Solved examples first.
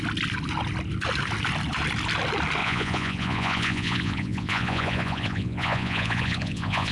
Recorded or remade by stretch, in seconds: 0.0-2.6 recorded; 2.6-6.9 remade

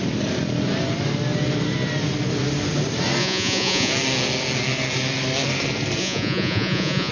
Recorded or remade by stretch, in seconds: 0.0-3.2 recorded; 3.2-3.9 remade; 3.9-6.0 recorded; 6.0-7.1 remade